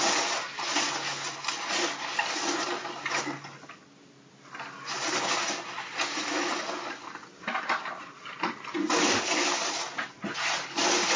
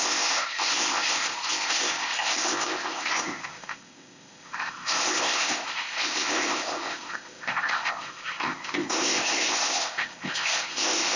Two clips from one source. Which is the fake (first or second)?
second